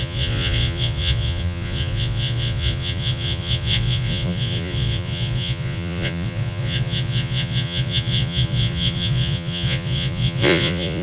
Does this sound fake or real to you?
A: fake